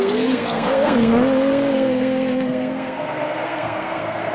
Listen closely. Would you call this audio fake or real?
fake